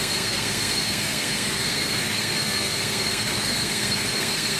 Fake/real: fake